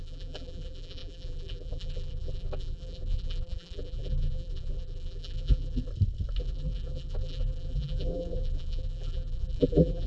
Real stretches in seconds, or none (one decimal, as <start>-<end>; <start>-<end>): 5.9-6.4